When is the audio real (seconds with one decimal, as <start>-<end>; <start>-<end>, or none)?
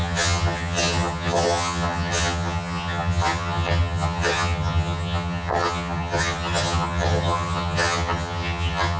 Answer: none